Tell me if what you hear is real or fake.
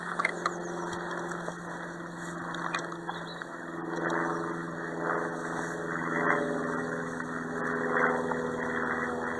real